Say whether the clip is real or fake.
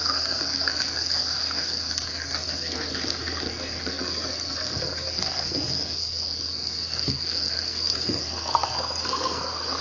fake